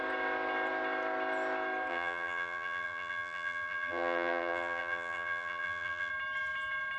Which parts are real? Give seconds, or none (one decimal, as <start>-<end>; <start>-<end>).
0.0-1.9; 6.1-7.0